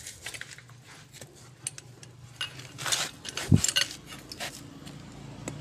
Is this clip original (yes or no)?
yes